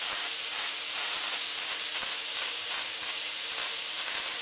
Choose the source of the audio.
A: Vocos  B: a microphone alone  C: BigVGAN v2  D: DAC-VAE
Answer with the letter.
C